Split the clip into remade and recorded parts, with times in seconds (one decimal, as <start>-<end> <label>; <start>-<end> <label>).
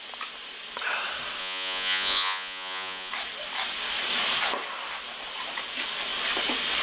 0.0-1.4 recorded; 1.4-3.1 remade; 3.1-6.8 recorded